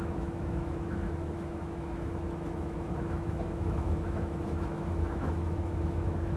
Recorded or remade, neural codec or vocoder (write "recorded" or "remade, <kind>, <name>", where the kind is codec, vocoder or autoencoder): remade, autoencoder, DAC-VAE